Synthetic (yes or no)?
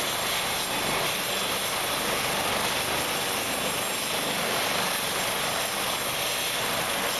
no